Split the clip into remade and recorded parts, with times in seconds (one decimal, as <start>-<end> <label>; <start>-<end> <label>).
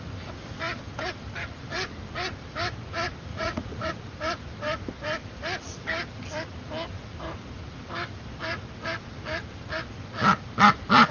0.0-3.3 recorded; 3.3-3.9 remade; 3.9-11.1 recorded